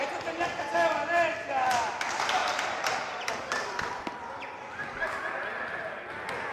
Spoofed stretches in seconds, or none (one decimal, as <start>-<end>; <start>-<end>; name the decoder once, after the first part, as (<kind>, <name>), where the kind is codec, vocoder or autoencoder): 2.4-3.3 (vocoder, BigVGAN v2)